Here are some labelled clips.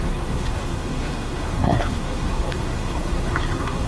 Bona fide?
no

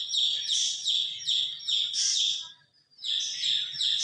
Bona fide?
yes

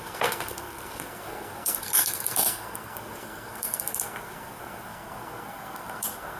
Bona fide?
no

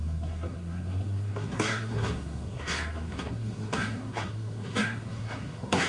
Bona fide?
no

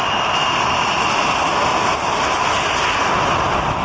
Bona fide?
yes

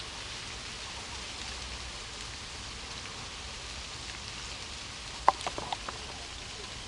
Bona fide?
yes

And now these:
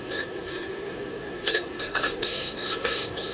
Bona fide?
no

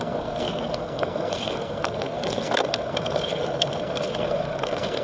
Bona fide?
no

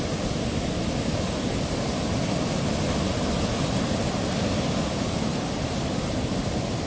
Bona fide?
yes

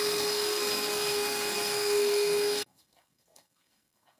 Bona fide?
no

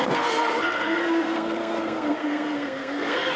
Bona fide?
no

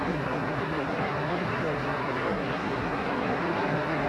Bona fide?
no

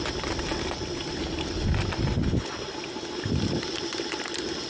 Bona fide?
yes